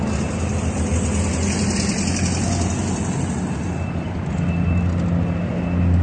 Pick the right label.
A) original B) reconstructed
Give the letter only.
A